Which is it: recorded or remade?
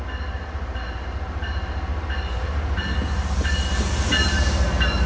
recorded